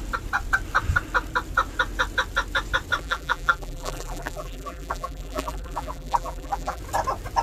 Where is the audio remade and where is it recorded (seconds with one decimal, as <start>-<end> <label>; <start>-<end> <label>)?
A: 0.0-3.0 recorded; 3.0-6.8 remade; 6.8-7.4 recorded